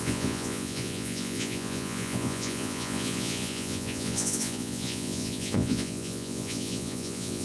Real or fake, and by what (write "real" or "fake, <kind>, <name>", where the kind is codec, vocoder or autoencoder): fake, vocoder, Vocos